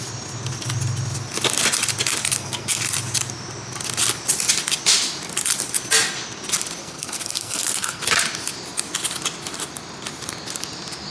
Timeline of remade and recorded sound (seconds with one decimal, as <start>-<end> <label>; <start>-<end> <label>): 0.0-2.2 recorded; 2.2-2.8 remade; 2.8-6.8 recorded; 6.8-8.0 remade; 8.0-11.1 recorded